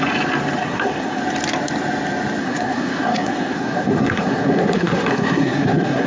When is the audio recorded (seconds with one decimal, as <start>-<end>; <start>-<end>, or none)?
0.0-0.6; 1.2-2.4